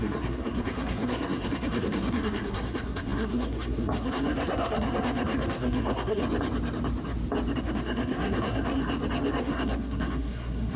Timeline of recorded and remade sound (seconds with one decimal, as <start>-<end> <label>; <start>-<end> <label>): 0.0-6.2 remade; 6.2-7.6 recorded; 7.6-8.8 remade; 8.8-9.4 recorded; 9.4-10.8 remade